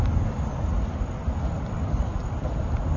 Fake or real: real